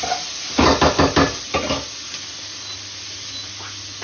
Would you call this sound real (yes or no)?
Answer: yes